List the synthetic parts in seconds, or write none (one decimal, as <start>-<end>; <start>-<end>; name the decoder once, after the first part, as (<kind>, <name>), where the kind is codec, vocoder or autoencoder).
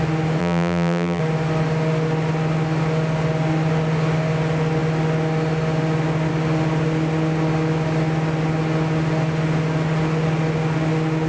0.4-1.2 (vocoder, BigVGAN v2)